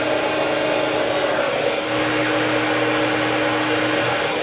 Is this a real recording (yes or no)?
yes